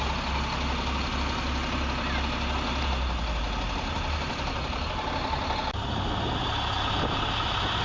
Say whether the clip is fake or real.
real